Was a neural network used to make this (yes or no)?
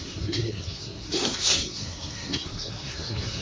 yes